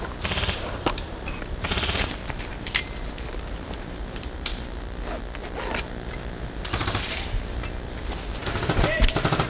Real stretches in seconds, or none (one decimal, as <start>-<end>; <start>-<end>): 4.5-5.8; 8.4-9.0